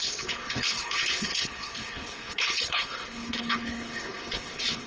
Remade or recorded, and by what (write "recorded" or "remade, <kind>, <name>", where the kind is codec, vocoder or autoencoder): remade, codec, HILCodec